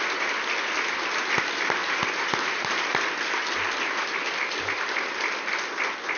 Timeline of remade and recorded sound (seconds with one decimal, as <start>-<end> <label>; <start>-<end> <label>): 0.0-1.8 recorded; 1.8-2.9 remade; 2.9-6.2 recorded